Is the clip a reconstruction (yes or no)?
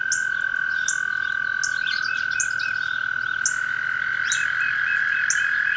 no